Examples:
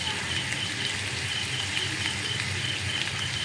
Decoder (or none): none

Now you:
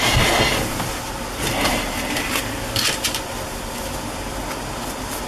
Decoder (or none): none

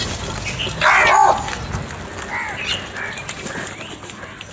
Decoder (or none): none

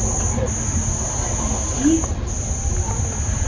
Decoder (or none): none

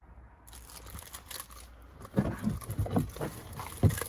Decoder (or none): none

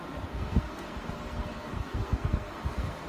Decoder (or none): codec, SNAC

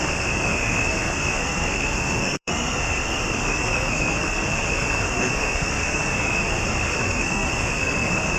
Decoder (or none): codec, SNAC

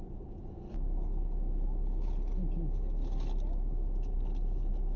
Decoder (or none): none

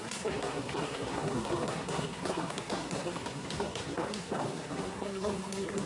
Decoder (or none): codec, SNAC